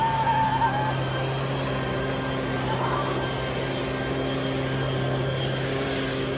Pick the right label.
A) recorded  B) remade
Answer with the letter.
A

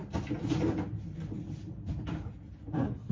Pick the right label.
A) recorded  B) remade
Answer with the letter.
A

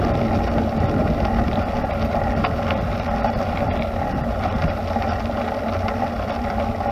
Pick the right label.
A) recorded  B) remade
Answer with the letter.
A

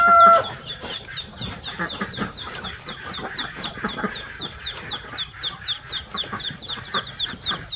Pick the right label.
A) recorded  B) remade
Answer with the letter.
B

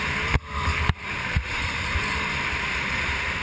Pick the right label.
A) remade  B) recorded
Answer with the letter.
A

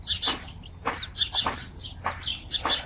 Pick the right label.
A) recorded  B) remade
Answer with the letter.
A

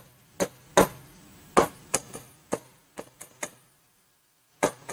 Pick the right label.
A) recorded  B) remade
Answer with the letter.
A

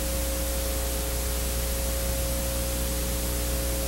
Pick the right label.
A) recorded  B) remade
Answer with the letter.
A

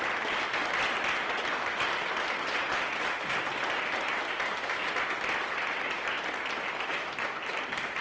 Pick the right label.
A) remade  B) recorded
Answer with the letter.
B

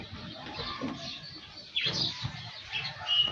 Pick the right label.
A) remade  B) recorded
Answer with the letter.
A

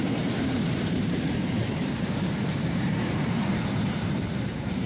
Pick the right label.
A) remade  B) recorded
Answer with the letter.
A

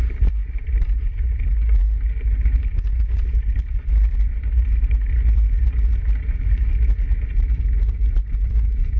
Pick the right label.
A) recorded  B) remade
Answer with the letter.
B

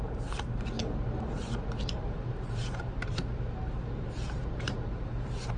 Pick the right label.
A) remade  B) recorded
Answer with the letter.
A